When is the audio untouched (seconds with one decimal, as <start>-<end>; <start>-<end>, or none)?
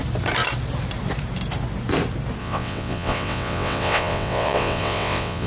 0.0-2.4